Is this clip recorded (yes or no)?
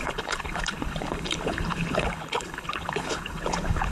no